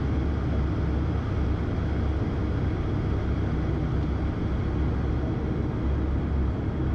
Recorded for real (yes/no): yes